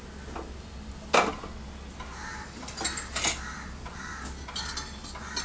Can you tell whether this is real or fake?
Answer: real